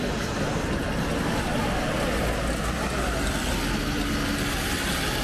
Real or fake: real